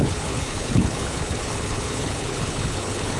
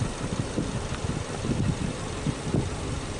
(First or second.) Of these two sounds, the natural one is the second